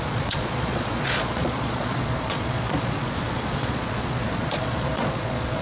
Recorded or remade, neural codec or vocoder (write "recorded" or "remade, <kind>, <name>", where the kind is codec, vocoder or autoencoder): remade, vocoder, Vocos